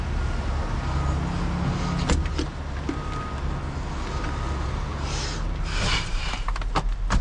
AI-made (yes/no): no